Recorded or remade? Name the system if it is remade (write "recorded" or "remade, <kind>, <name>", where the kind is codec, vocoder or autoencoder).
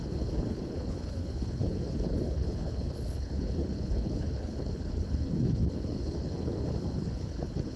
remade, codec, HILCodec